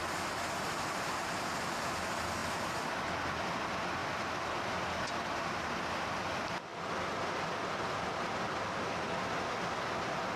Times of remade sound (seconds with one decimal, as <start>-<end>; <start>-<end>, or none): none